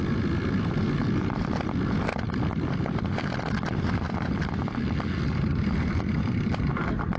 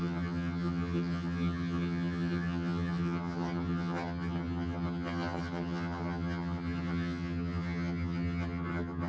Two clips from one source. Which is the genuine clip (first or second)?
first